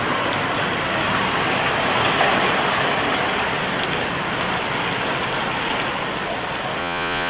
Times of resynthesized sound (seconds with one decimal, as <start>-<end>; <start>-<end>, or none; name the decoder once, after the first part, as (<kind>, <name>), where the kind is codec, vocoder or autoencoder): 6.8-7.3 (vocoder, Vocos)